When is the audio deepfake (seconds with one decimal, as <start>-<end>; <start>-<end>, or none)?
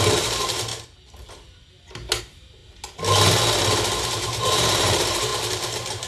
0.0-0.7; 2.2-2.6; 4.0-6.1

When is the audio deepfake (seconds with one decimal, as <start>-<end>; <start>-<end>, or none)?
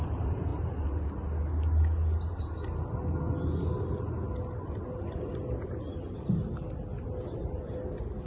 none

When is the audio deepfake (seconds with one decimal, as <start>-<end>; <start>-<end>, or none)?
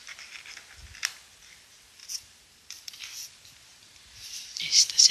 2.0-4.6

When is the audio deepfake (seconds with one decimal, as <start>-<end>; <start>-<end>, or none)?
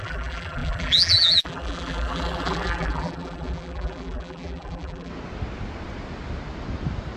0.0-5.1